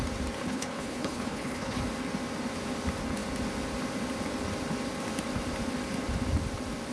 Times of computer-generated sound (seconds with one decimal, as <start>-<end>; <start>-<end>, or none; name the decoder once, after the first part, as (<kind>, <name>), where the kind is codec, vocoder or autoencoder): 0.4-1.8 (codec, HILCodec)

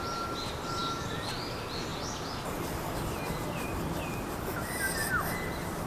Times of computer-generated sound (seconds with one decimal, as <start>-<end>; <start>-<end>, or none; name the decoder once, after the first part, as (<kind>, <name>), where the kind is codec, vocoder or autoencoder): none

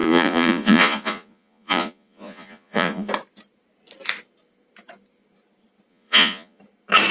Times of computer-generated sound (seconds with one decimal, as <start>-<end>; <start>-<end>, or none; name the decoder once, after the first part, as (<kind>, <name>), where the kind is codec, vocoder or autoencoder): 0.0-3.1 (vocoder, Vocos); 5.9-6.6

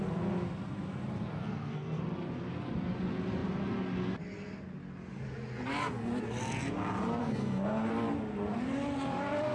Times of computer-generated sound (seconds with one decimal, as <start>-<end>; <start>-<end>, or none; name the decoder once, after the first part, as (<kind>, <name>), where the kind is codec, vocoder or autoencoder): 1.4-2.0 (codec, SNAC); 7.2-7.9

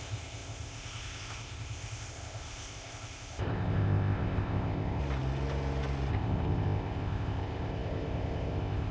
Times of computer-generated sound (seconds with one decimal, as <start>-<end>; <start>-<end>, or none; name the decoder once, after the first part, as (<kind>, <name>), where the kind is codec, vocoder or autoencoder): 0.0-5.0 (codec, ZipCodec); 6.1-8.9

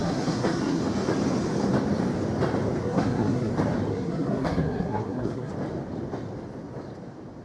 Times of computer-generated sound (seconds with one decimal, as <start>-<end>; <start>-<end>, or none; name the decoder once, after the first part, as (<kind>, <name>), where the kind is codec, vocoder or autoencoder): 0.0-0.8 (codec, SNAC); 2.8-3.5; 3.9-5.5

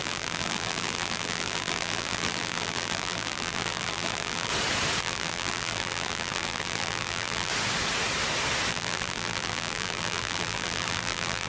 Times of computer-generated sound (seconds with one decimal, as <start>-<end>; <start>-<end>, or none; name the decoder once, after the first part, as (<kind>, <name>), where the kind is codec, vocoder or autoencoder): 0.0-4.5 (vocoder, BigVGAN v2); 5.0-7.5; 8.7-11.5

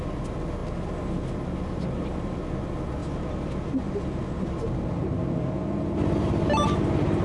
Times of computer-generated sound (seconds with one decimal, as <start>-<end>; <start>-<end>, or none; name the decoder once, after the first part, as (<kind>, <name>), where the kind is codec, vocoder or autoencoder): none